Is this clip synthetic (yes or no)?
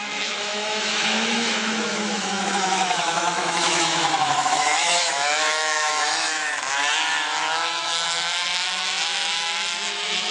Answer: yes